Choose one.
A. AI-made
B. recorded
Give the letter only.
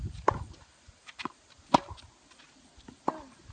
B